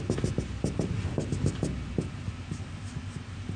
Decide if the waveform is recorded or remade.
recorded